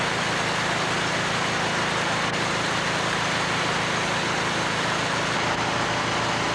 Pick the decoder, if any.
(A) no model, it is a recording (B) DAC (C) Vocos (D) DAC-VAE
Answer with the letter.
A